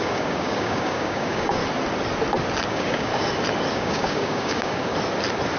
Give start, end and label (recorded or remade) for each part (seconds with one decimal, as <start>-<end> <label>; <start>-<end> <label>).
0.0-1.6 remade; 1.6-2.7 recorded; 2.7-3.1 remade; 3.1-3.7 recorded; 3.7-4.9 remade; 4.9-5.6 recorded